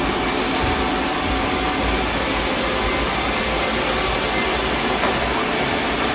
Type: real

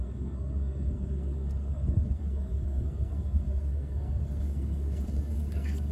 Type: fake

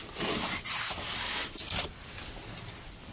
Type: real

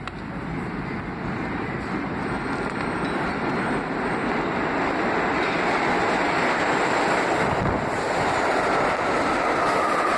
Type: real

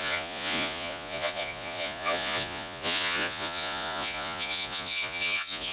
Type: fake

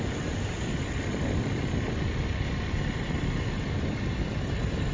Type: real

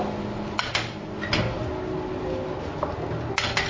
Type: real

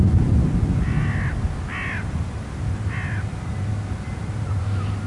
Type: real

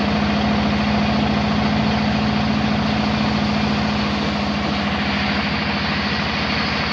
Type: real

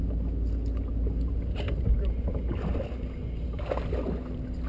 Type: real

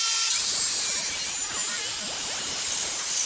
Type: real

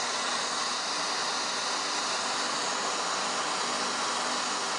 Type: real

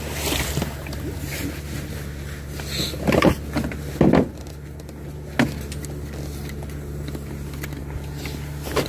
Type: real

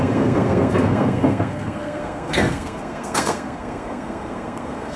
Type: fake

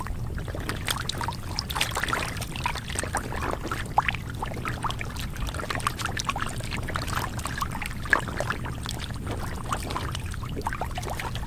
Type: real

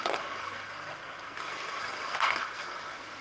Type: fake